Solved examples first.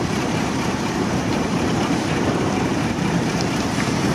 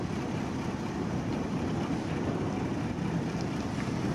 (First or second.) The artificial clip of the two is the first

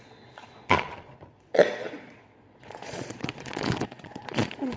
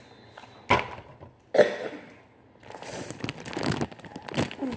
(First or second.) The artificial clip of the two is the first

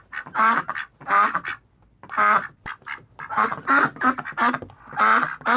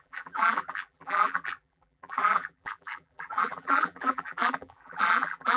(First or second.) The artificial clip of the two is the second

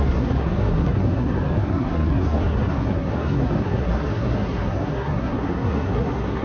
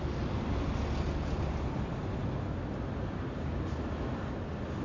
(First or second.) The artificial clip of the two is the first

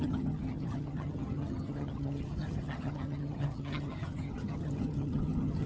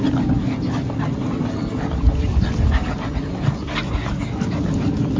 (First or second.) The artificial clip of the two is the first